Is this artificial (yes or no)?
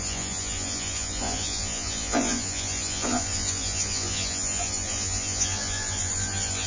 yes